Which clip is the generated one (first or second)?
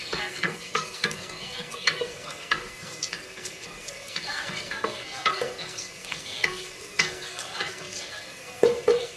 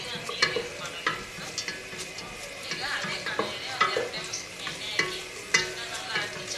first